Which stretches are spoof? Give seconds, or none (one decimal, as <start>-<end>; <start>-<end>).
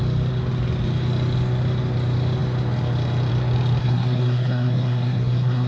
3.8-5.7